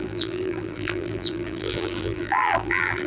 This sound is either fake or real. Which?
fake